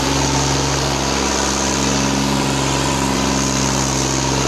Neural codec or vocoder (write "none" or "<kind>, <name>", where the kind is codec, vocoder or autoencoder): vocoder, BigVGAN v2